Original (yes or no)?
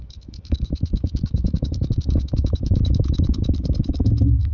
no